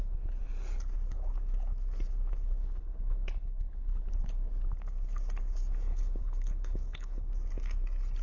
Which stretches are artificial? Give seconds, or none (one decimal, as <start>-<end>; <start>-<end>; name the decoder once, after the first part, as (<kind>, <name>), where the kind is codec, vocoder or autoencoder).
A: 2.6-4.2 (codec, HILCodec); 5.9-7.3